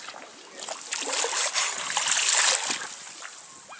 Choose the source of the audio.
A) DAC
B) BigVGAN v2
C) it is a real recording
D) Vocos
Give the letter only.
C